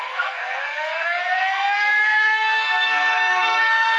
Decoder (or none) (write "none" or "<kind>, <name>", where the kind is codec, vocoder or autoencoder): codec, SNAC